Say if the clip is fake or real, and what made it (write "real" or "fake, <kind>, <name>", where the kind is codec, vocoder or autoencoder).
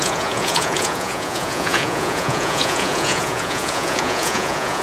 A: fake, vocoder, Vocos